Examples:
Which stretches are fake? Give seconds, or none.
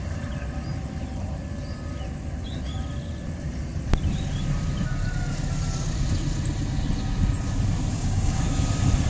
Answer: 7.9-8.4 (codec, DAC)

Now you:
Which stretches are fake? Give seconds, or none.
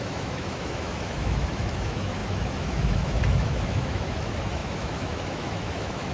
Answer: 0.0-6.1 (autoencoder, DAC-VAE)